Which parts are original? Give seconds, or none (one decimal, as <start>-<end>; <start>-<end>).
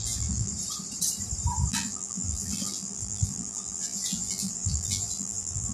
0.5-1.7